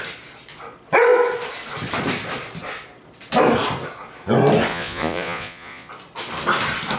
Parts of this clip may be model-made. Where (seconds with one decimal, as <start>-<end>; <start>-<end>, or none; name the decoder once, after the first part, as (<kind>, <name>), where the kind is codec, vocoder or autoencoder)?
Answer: 4.7-5.9 (vocoder, Vocos)